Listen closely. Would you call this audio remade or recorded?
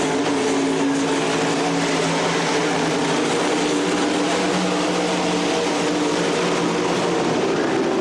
recorded